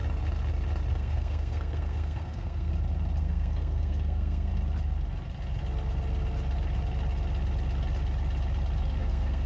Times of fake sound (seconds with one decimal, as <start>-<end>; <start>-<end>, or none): 0.9-2.7; 3.2-4.5; 9.0-9.5